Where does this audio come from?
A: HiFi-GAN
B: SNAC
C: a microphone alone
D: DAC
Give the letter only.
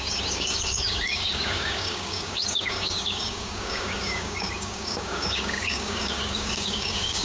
D